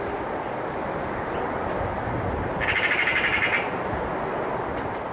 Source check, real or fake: real